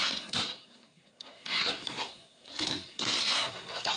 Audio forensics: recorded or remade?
remade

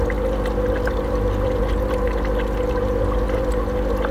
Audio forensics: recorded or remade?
recorded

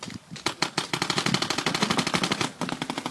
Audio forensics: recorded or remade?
recorded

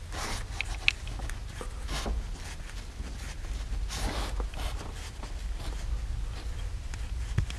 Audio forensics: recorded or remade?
recorded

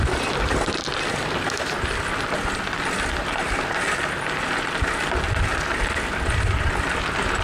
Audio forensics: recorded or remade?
recorded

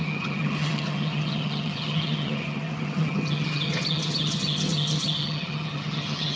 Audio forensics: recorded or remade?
remade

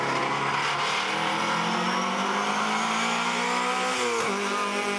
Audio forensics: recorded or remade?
recorded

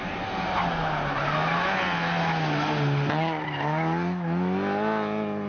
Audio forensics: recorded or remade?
recorded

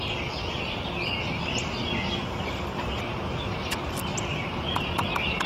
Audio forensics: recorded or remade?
recorded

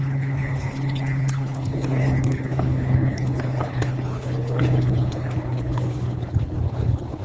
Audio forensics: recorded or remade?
remade